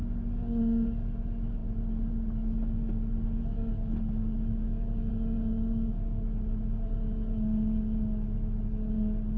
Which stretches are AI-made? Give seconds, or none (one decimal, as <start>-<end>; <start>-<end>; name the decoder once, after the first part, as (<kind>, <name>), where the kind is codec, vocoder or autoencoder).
none